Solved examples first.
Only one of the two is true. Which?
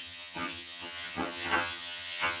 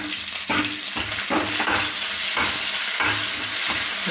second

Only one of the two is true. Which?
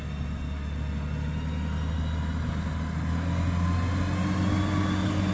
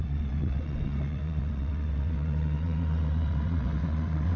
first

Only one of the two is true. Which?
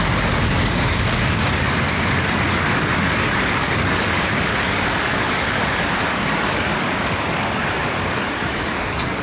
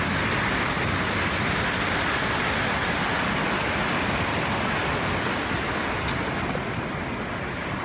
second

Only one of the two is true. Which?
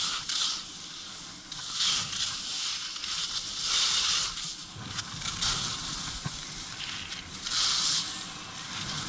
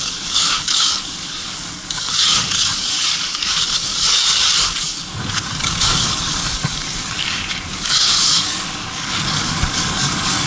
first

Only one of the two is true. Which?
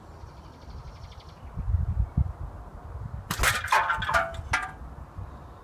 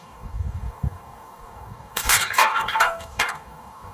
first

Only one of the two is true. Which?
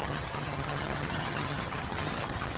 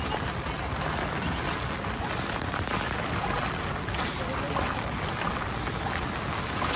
second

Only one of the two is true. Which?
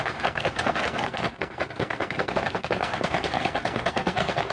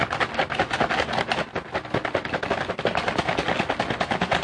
second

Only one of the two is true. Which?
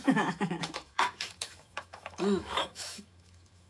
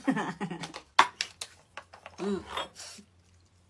second